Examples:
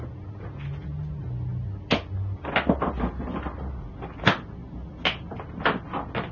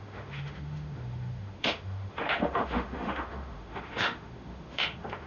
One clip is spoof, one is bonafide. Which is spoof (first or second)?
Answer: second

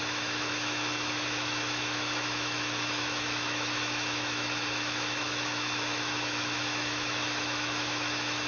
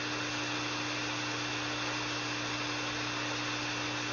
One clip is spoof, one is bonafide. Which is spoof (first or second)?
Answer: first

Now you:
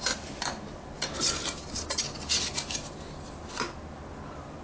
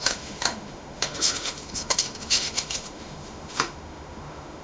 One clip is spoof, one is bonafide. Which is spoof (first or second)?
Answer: second